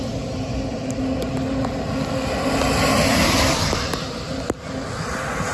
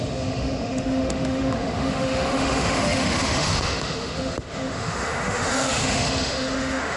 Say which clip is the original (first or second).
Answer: first